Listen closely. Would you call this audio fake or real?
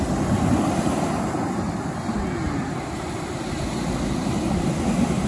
real